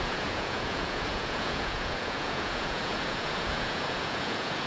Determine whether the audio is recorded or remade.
remade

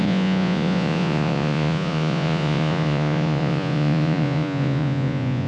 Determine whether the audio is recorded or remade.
remade